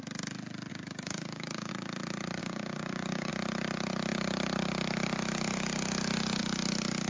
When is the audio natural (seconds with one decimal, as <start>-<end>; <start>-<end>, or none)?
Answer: 0.0-0.7; 1.7-2.4; 3.3-7.1